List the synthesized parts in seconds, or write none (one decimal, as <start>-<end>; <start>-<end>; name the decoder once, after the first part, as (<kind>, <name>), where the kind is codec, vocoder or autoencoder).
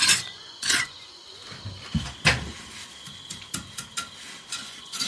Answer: 0.0-1.4 (vocoder, Vocos); 4.5-5.1